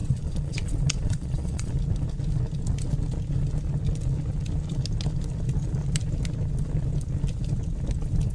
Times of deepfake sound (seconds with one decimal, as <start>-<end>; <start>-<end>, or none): 0.0-1.7

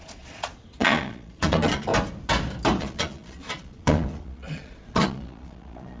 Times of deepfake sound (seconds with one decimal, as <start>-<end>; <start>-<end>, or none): 0.0-1.9; 2.8-6.0

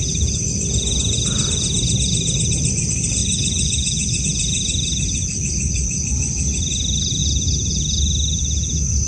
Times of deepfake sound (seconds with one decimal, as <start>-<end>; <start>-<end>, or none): 3.2-4.2